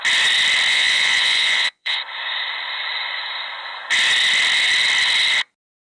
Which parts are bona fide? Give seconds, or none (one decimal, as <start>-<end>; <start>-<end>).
0.0-0.7; 2.0-5.8